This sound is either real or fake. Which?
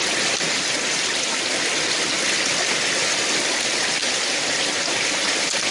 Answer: real